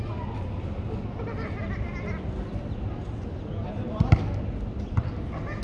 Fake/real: real